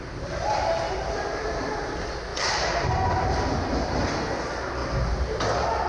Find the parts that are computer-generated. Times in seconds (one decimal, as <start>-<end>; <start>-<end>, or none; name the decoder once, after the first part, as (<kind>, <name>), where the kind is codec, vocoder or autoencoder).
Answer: 2.3-4.2 (vocoder, BigVGAN v2); 4.8-5.4